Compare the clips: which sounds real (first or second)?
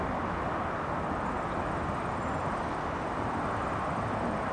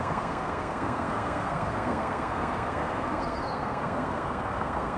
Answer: first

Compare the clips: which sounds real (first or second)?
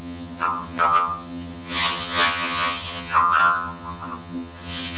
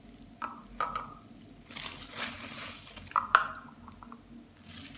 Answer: second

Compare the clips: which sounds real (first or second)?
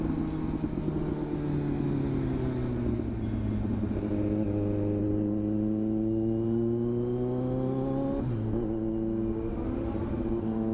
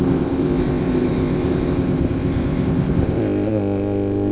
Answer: first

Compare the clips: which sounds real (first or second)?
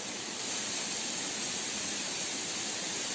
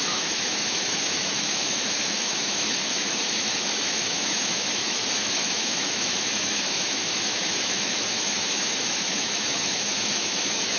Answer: first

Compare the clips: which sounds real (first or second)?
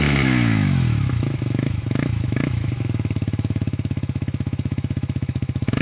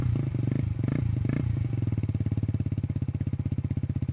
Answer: second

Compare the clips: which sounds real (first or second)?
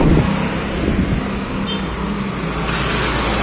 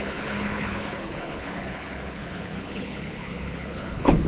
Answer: first